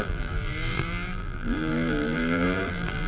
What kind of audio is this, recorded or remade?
remade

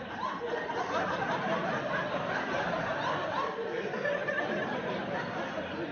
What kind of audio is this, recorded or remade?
recorded